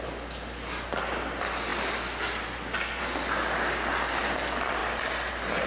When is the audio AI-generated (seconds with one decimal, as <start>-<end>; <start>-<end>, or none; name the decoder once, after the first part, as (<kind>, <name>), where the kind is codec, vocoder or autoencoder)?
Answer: none